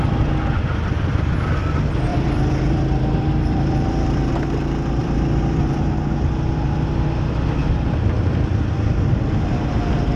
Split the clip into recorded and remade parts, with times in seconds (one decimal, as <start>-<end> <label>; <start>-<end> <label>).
0.0-2.1 recorded; 2.1-4.3 remade; 4.3-5.0 recorded; 5.0-5.6 remade; 5.6-7.6 recorded; 7.6-8.6 remade; 8.6-10.2 recorded